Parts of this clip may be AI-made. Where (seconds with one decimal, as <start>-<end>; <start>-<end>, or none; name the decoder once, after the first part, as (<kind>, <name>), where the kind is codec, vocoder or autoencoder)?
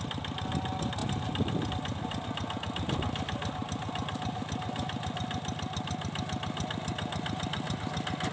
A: none